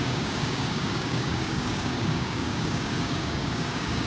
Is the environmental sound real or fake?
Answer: fake